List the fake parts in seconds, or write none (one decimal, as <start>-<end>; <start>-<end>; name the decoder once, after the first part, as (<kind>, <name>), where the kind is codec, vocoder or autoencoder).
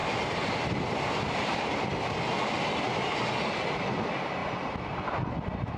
none